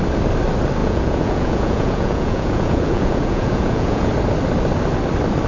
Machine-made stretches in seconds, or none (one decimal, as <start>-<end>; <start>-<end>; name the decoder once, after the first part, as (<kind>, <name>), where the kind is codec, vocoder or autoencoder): 0.8-4.1 (vocoder, Vocos)